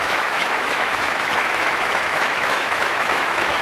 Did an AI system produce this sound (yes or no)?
yes